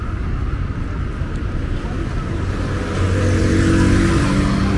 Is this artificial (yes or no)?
no